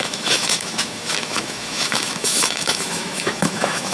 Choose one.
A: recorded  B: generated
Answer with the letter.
B